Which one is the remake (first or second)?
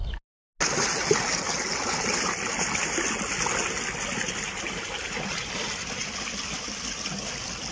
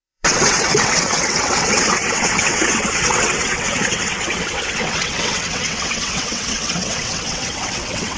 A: second